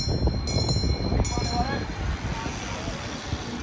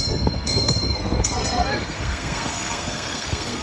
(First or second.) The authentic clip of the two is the first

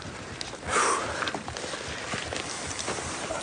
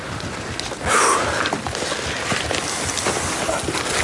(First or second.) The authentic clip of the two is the second